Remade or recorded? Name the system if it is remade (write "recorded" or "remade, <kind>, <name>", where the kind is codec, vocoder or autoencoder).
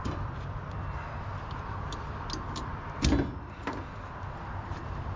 recorded